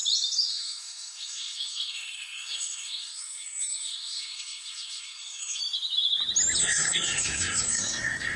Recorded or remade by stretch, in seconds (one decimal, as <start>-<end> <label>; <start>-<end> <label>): 0.0-0.5 recorded; 0.5-5.6 remade; 5.6-6.6 recorded; 6.6-8.4 remade